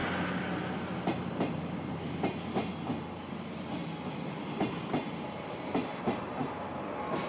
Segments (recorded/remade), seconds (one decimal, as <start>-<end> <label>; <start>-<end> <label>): 0.0-7.3 recorded